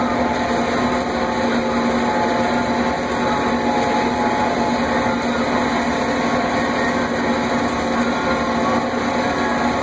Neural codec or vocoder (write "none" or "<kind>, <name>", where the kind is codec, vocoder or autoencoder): none